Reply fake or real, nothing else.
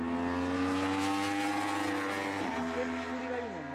real